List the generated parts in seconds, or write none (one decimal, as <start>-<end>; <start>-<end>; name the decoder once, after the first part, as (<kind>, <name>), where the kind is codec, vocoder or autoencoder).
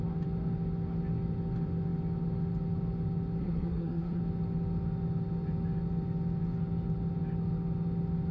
3.4-4.2 (codec, SNAC)